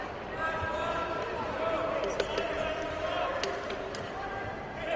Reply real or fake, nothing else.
real